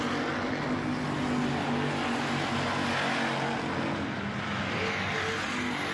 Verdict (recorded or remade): recorded